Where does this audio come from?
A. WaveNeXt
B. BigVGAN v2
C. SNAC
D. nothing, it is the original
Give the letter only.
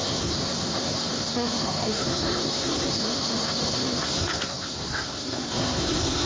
C